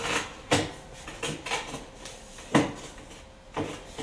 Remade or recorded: recorded